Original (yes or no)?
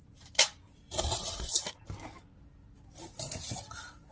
yes